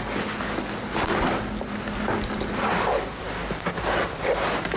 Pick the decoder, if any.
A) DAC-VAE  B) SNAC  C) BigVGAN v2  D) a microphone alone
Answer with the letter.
D